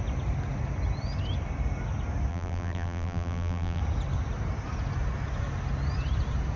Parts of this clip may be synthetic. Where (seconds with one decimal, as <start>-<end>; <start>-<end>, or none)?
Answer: 2.3-3.8